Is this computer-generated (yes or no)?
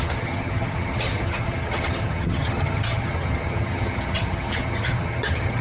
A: yes